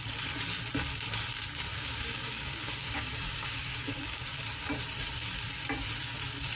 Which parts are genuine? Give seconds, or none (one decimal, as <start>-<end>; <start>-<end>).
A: 0.0-1.7; 4.3-6.6